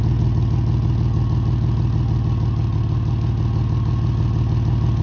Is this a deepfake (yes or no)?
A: no